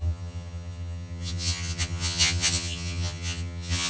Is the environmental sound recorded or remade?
remade